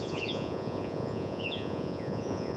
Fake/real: fake